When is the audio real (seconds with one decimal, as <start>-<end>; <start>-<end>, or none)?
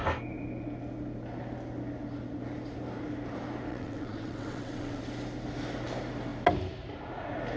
0.0-3.7; 5.0-7.6